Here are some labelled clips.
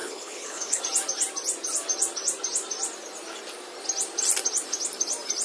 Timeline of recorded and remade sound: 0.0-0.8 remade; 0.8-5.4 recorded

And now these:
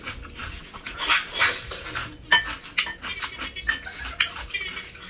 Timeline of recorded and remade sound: 0.0-5.1 recorded

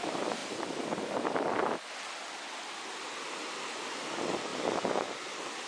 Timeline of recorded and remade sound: 0.0-5.7 recorded

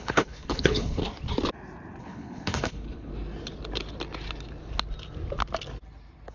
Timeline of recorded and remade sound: 0.0-1.0 remade; 1.0-2.0 recorded; 2.0-3.1 remade; 3.1-6.3 recorded

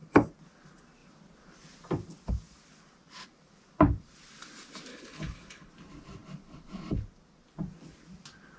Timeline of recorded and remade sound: 0.0-4.9 recorded; 4.9-5.7 remade; 5.7-8.6 recorded